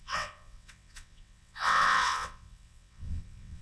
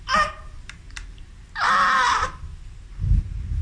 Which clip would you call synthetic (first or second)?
first